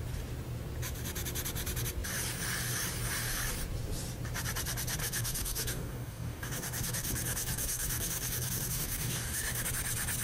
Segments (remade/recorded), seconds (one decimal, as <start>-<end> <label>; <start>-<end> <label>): 0.0-5.0 recorded; 5.0-9.7 remade; 9.7-10.2 recorded